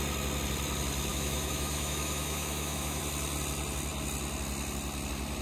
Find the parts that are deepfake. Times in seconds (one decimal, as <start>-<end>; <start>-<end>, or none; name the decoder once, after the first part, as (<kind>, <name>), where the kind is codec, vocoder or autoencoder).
1.1-3.0 (autoencoder, DAC-VAE)